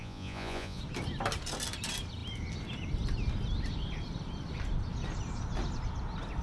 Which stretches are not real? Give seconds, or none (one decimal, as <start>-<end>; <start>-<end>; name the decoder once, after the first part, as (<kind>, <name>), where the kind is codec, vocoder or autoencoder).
0.0-0.8 (vocoder, Vocos)